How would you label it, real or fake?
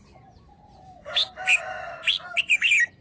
real